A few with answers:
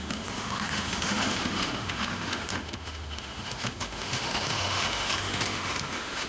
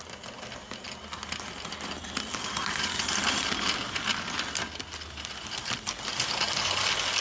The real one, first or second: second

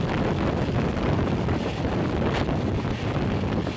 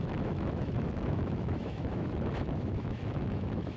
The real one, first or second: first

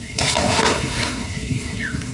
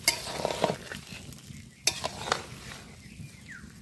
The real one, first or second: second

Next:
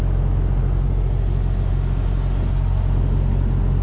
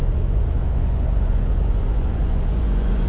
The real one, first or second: first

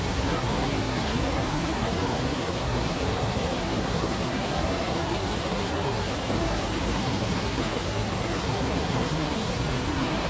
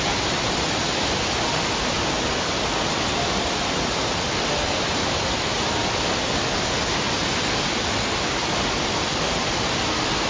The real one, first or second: second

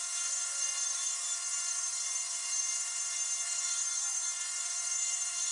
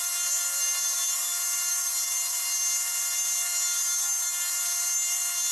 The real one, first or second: second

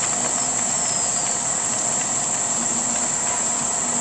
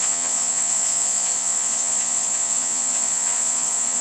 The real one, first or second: first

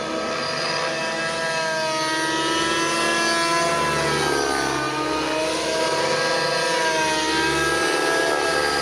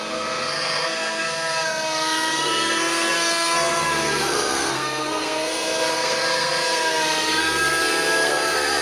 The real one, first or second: first